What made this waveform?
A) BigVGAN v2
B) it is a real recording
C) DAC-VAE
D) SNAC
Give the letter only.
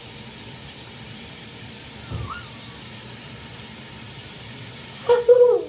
A